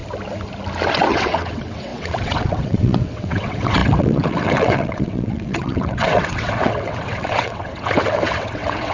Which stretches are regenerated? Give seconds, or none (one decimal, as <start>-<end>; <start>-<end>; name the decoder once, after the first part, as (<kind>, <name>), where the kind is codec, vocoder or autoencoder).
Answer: 0.9-8.9 (vocoder, WaveNeXt)